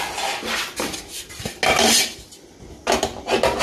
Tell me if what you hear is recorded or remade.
recorded